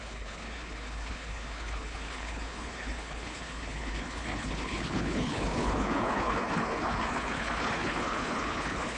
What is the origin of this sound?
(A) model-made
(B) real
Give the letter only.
A